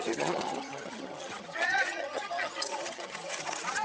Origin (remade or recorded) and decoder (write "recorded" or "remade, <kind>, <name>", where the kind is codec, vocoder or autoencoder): remade, vocoder, HiFi-GAN